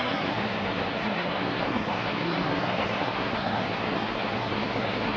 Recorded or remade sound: remade